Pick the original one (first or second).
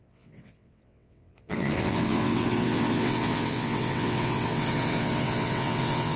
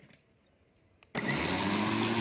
second